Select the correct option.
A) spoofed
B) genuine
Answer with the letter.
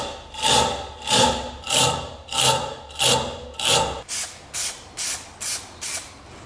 B